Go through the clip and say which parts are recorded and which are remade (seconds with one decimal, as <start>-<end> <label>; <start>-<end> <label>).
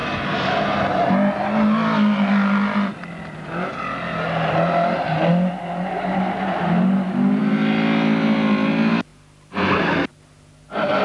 0.0-11.0 recorded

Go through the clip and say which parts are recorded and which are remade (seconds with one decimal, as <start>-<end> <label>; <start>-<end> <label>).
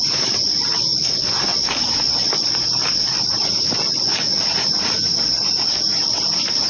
0.0-6.7 recorded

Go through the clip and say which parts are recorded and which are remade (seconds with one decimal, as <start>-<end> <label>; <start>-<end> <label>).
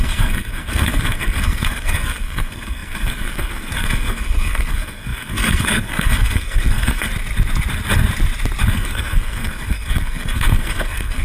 0.0-7.1 remade; 7.1-8.7 recorded; 8.7-11.2 remade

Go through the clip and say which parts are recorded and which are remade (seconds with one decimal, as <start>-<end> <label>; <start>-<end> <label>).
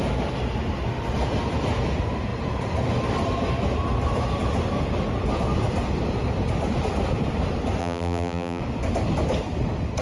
0.0-7.8 recorded; 7.8-8.6 remade; 8.6-10.0 recorded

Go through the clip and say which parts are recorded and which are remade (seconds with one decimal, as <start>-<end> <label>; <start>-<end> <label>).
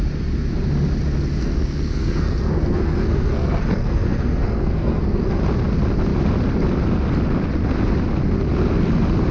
0.0-1.4 recorded; 1.4-5.4 remade; 5.4-9.3 recorded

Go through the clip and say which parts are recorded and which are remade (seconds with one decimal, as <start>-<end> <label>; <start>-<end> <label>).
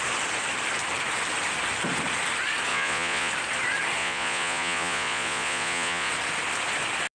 0.0-2.7 recorded; 2.7-3.3 remade; 3.3-4.0 recorded; 4.0-6.1 remade; 6.1-7.1 recorded